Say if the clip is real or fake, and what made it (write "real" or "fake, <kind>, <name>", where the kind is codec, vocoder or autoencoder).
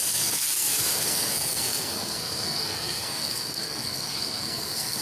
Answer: fake, codec, SNAC